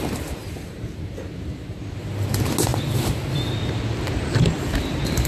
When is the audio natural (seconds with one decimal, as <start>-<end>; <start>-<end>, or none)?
0.0-0.4; 1.0-5.3